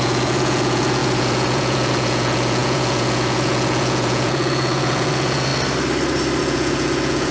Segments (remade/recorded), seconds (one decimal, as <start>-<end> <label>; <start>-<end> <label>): 0.0-5.5 remade; 5.5-6.4 recorded; 6.4-7.3 remade